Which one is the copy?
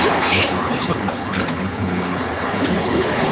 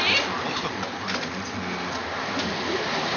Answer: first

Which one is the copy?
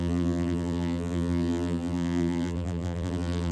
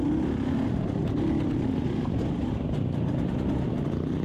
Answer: first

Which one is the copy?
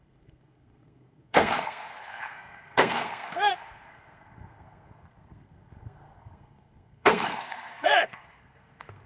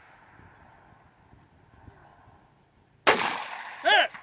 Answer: first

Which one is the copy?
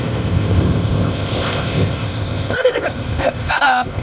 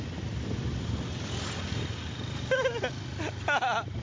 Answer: first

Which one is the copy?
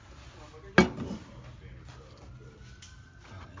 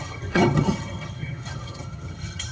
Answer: second